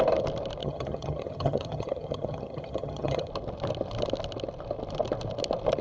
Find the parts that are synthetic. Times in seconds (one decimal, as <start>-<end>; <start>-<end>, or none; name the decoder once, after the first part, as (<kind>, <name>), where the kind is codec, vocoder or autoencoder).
0.6-3.3 (vocoder, HiFi-GAN)